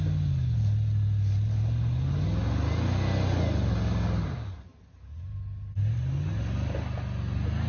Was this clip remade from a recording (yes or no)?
no